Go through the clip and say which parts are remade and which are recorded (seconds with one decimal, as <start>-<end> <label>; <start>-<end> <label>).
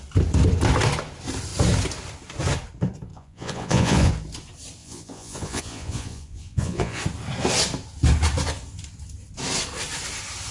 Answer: 0.0-3.1 recorded; 3.1-4.1 remade; 4.1-4.8 recorded; 4.8-7.0 remade; 7.0-10.5 recorded